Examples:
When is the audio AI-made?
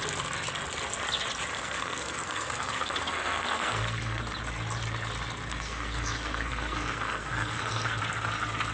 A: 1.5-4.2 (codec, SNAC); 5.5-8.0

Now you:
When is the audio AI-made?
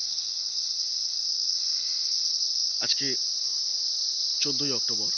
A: 0.0-2.8 (codec, SNAC)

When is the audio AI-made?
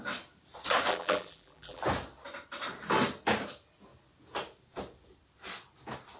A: 0.9-1.8 (vocoder, BigVGAN v2)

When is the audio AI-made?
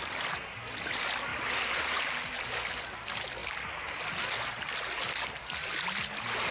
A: none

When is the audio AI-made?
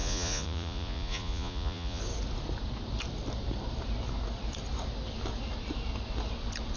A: 0.0-2.0 (vocoder, Vocos)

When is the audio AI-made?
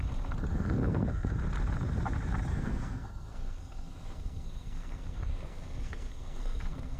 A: 0.5-1.3 (codec, SNAC); 2.5-7.0